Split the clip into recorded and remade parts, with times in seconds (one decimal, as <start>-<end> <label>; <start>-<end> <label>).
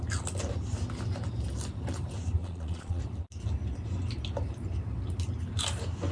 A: 0.0-2.4 recorded; 2.4-3.0 remade; 3.0-6.1 recorded